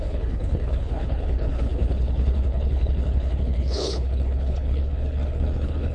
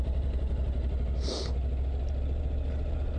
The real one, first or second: second